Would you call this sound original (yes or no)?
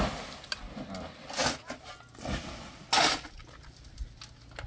yes